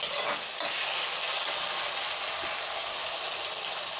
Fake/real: real